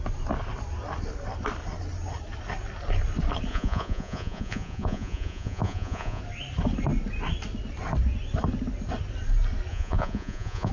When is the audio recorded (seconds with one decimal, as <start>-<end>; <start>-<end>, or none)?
0.0-3.5; 6.2-9.7